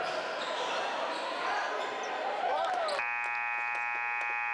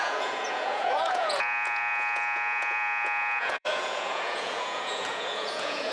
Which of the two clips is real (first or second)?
first